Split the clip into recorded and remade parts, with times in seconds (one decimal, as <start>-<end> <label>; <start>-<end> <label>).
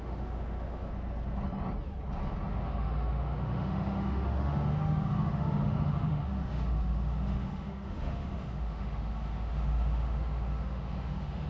0.0-0.9 remade; 0.9-2.5 recorded; 2.5-11.5 remade